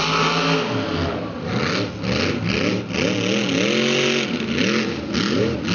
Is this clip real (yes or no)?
yes